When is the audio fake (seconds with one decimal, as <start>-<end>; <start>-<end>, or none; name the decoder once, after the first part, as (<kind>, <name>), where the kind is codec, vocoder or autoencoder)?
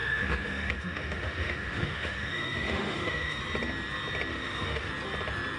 0.0-3.4 (autoencoder, DAC-VAE); 4.3-4.9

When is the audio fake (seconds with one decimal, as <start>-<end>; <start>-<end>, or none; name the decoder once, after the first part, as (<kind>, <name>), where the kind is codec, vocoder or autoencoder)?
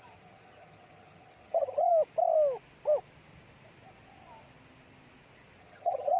0.0-1.9 (vocoder, HiFi-GAN); 5.6-6.2